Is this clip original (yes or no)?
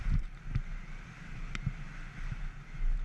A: yes